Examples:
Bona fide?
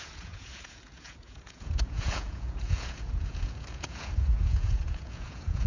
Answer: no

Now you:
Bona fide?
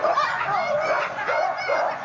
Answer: no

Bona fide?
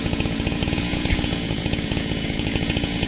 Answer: no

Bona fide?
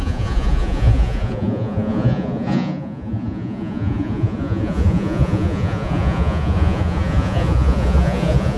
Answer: no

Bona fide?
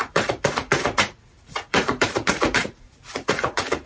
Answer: no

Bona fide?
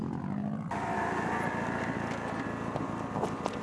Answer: yes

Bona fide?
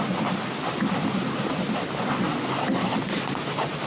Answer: yes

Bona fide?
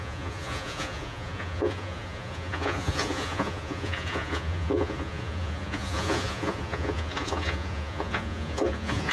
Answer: no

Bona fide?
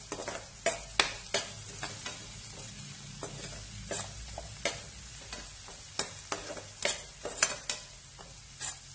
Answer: yes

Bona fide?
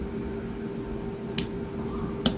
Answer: yes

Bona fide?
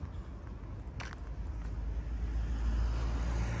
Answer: yes